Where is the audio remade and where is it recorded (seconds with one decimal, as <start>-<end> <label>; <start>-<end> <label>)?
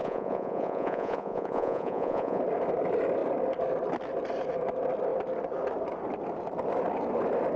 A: 0.0-2.4 remade; 2.4-7.6 recorded